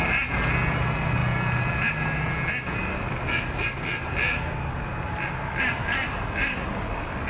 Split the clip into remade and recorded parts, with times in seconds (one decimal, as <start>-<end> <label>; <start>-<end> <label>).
0.0-7.3 recorded